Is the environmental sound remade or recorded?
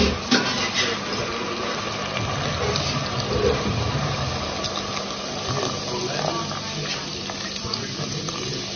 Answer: recorded